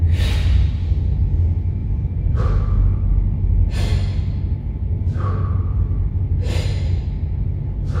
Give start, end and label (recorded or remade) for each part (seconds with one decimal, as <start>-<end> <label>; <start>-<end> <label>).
0.0-1.8 recorded; 1.8-2.4 remade; 2.4-8.0 recorded